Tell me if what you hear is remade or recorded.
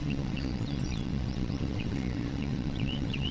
remade